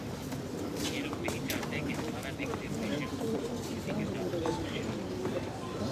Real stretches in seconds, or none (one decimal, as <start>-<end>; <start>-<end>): 0.0-5.9